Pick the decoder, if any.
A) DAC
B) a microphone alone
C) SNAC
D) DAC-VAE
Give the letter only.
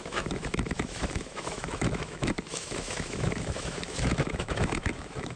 D